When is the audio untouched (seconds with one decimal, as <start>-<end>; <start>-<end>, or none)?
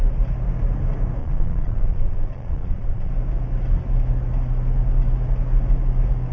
0.0-1.2; 3.1-6.3